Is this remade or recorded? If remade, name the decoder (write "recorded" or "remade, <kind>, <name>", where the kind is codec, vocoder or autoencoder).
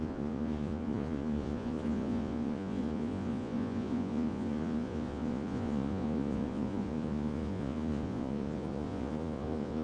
remade, vocoder, Vocos